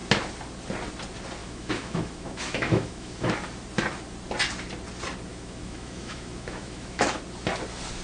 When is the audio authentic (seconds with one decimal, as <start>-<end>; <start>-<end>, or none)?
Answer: 0.0-1.4; 3.3-5.3; 7.2-8.0

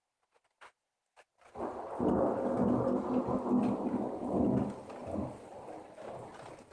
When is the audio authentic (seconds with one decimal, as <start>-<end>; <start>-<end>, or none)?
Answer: 0.0-6.7

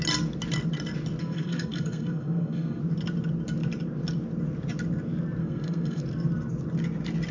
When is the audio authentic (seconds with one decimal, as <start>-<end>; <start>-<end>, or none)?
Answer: 0.0-1.2; 2.8-5.4; 6.0-7.3

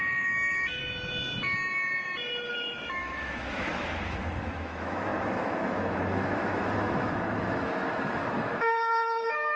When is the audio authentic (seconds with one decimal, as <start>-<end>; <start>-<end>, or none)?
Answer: 0.8-2.5